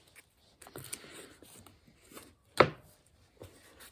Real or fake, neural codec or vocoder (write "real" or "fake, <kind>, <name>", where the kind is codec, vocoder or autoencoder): real